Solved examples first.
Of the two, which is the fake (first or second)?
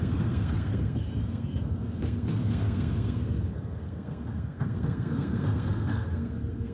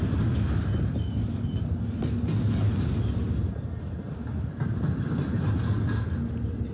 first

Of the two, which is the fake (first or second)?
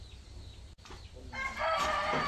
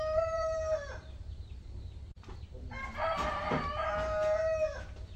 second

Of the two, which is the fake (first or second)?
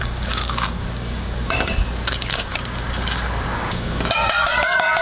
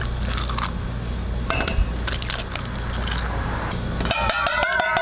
first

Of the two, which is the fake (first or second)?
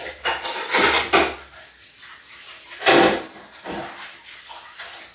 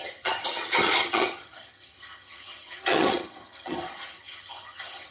second